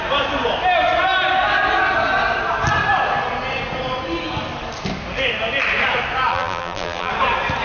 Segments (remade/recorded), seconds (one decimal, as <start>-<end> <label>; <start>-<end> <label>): 0.0-6.3 recorded; 6.3-7.1 remade; 7.1-7.6 recorded